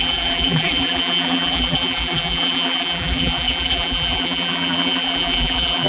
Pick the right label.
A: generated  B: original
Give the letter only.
A